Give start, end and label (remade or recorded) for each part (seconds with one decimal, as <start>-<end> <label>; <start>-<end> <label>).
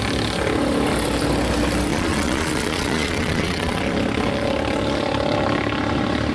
0.0-1.9 recorded; 1.9-3.8 remade; 3.8-6.3 recorded